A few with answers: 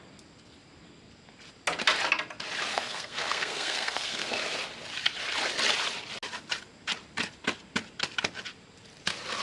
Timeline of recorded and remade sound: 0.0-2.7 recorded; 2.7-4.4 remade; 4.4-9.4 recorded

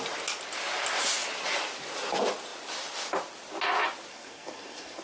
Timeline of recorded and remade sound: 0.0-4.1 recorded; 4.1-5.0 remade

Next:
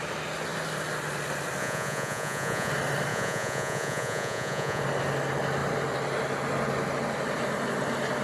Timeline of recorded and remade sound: 0.0-1.6 recorded; 1.6-2.7 remade; 2.7-3.1 recorded; 3.1-4.8 remade; 4.8-8.2 recorded

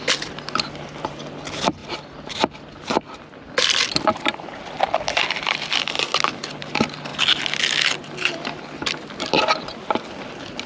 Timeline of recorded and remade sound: 0.0-10.7 recorded

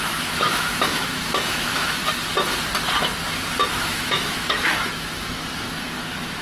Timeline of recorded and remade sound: 0.0-2.0 remade; 2.0-3.7 recorded; 3.7-6.4 remade

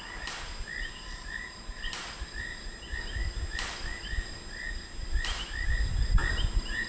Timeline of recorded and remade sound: 0.0-6.9 recorded